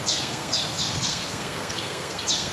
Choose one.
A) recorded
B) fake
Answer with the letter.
B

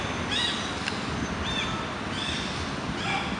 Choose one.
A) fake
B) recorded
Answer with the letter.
B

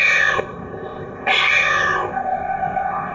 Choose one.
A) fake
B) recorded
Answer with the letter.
A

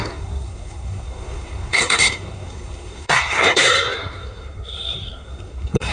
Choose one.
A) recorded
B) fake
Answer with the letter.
B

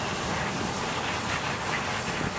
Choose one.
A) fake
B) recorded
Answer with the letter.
B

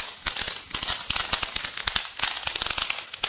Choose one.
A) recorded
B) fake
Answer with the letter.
A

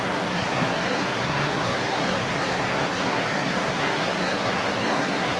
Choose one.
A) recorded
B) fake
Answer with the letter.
B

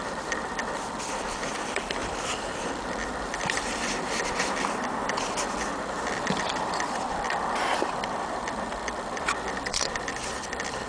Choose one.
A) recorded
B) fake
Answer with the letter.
B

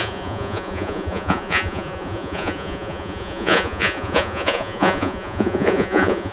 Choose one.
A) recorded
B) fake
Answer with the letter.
B